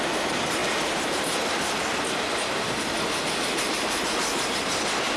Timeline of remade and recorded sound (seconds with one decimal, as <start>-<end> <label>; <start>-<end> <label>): 0.0-5.2 recorded